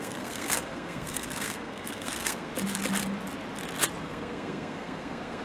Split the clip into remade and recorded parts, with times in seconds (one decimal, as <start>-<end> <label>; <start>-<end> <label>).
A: 0.0-2.5 remade; 2.5-4.0 recorded; 4.0-5.4 remade